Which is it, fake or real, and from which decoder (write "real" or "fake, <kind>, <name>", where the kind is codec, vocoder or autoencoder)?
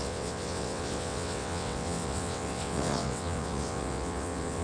fake, vocoder, WaveNeXt